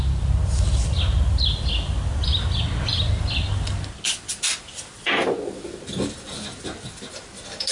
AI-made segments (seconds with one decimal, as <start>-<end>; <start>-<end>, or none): none